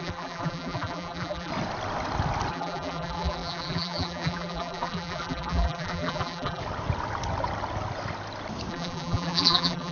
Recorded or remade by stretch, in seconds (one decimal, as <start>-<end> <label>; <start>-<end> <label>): 0.0-1.5 remade; 1.5-2.5 recorded; 2.5-6.6 remade; 6.6-8.7 recorded; 8.7-9.9 remade